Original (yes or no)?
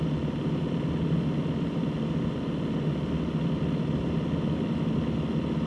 yes